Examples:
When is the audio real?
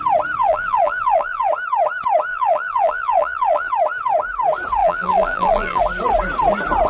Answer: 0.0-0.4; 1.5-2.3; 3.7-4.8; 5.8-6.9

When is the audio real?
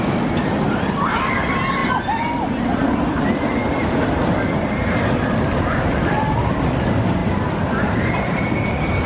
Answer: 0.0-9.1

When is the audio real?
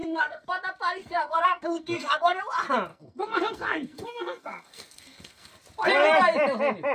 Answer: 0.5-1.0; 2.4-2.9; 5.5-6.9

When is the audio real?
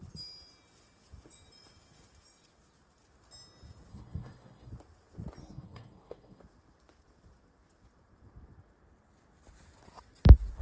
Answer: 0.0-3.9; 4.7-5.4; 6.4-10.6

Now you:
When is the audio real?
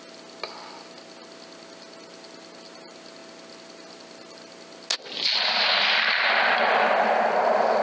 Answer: 0.0-7.8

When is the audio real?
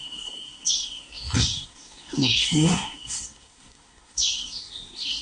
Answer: none